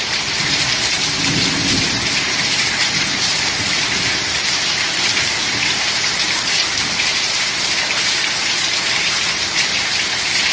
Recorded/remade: remade